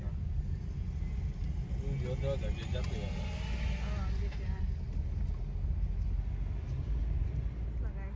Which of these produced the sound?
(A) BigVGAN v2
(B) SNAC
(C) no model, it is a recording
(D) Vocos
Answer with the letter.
C